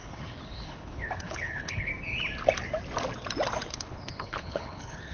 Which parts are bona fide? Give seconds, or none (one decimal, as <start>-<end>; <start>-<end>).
1.9-3.7